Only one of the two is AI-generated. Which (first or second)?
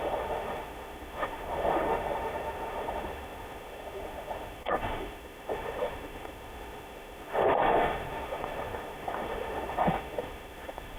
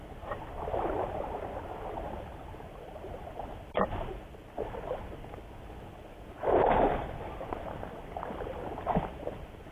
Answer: first